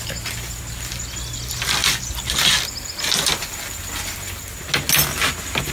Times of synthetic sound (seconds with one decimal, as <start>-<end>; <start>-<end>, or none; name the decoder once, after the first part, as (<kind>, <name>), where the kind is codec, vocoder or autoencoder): none